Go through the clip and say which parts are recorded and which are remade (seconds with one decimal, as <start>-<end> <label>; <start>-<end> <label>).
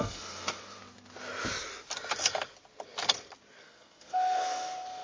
0.0-0.8 remade; 0.8-3.6 recorded; 3.6-5.0 remade